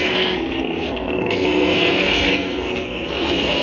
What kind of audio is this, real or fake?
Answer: fake